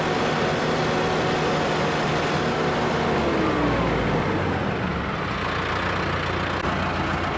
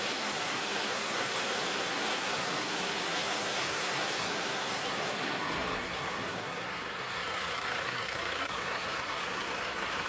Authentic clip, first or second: first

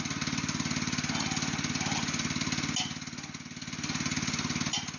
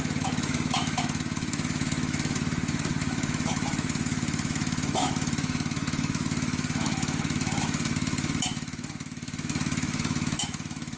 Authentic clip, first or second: first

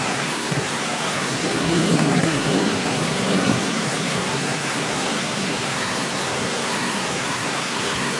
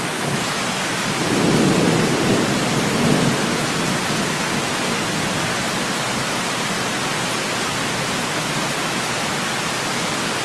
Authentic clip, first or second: second